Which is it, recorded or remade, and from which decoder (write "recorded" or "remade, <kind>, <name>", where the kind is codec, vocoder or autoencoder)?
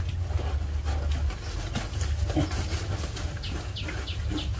recorded